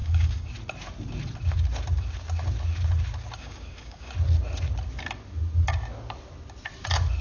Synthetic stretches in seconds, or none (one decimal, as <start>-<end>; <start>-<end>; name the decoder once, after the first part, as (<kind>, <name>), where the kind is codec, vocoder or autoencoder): 0.0-0.5 (codec, DAC); 3.4-4.1